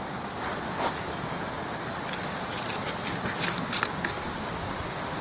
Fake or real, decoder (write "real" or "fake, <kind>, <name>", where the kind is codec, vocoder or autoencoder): real